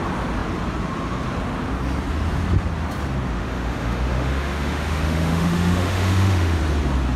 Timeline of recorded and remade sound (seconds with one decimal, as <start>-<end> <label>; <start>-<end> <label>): 0.0-3.4 recorded; 3.4-6.6 remade; 6.6-7.2 recorded